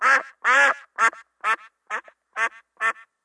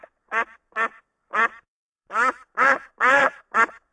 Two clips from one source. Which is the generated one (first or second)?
second